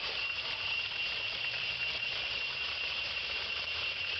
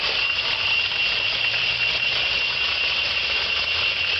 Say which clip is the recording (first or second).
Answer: second